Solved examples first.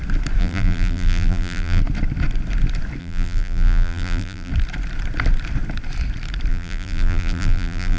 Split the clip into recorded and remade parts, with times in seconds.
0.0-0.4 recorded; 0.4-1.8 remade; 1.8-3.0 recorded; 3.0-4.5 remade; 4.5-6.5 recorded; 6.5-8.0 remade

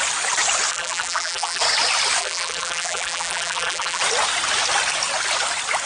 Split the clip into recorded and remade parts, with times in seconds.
0.0-0.7 recorded; 0.7-1.6 remade; 1.6-2.2 recorded; 2.2-4.0 remade; 4.0-5.9 recorded

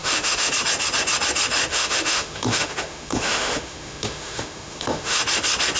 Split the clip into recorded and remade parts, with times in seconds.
0.0-0.5 remade; 0.5-1.7 recorded; 1.7-5.2 remade; 5.2-5.8 recorded

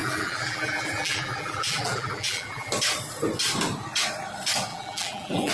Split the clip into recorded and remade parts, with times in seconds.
0.0-2.7 remade; 2.7-4.7 recorded; 4.7-5.5 remade

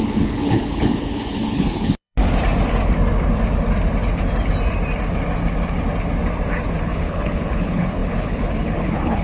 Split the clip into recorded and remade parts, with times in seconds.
0.0-2.2 remade; 2.2-6.8 recorded; 6.8-9.2 remade

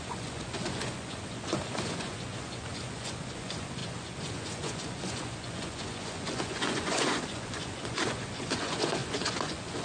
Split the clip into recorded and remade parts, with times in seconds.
0.0-9.8 remade

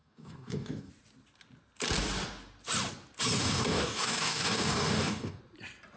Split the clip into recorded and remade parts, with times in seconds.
0.0-0.9 remade; 0.9-3.4 recorded; 3.4-5.4 remade; 5.4-6.0 recorded